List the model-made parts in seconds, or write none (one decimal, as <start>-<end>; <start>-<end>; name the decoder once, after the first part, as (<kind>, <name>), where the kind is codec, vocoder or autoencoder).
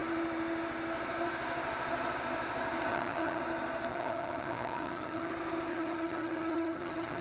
2.9-3.4 (vocoder, HiFi-GAN); 3.9-5.3; 5.7-7.2